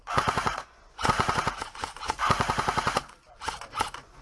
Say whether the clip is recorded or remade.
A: remade